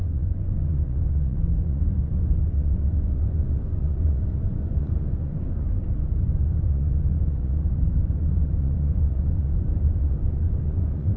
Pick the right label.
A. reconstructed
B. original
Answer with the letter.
A